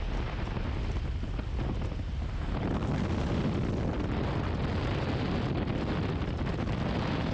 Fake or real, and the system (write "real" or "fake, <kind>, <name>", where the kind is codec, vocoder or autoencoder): real